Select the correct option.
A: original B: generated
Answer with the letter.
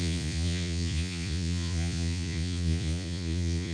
B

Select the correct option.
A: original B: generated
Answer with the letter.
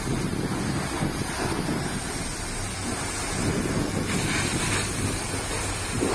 A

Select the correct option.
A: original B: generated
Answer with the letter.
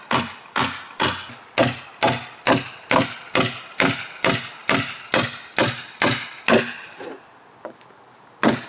A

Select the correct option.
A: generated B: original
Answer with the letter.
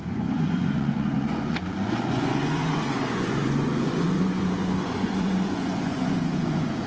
A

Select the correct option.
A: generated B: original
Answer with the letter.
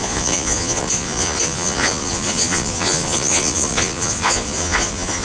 A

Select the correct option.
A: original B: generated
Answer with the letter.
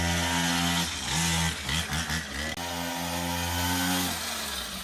A